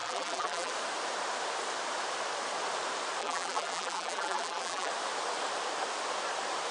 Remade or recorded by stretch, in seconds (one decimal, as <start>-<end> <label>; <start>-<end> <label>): 0.0-0.7 remade; 0.7-3.2 recorded; 3.2-4.9 remade; 4.9-6.7 recorded